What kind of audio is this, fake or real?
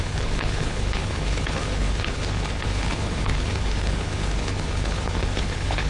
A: fake